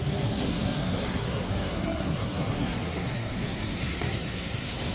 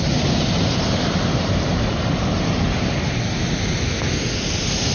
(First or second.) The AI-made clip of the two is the first